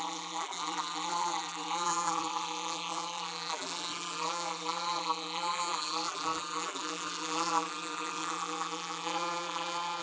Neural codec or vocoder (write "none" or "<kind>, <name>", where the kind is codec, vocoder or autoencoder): vocoder, BigVGAN v2